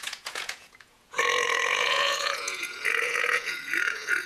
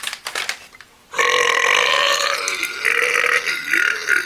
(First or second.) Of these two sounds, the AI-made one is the first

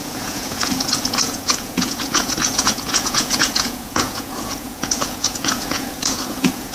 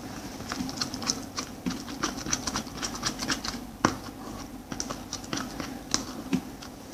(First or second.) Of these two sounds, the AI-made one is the first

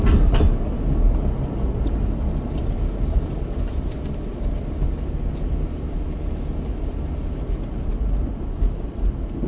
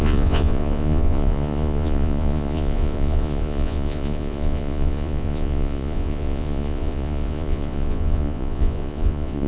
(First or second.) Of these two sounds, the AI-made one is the second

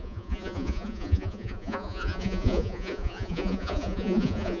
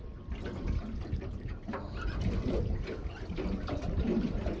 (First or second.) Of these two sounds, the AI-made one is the first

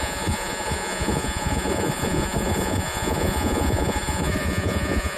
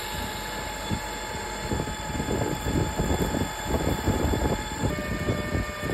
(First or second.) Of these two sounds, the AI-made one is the first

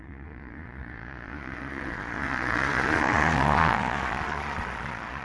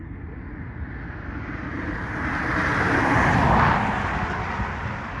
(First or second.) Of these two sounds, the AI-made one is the first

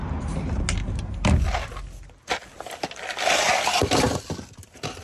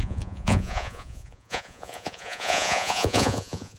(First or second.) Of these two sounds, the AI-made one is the second